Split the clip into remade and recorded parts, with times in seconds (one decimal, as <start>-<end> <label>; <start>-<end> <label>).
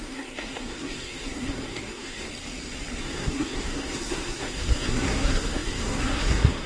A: 0.0-2.3 remade; 2.3-3.0 recorded; 3.0-6.7 remade